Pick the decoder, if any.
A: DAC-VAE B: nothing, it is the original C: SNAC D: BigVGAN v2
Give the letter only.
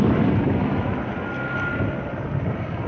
B